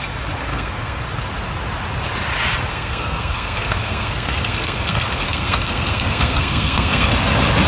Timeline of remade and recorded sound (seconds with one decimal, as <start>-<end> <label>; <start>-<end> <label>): 0.0-0.5 recorded; 0.5-1.0 remade; 1.0-2.7 recorded; 2.7-7.1 remade; 7.1-7.7 recorded